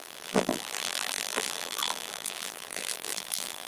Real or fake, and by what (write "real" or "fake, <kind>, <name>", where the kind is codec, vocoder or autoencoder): fake, vocoder, BigVGAN v2